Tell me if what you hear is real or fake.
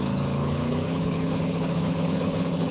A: fake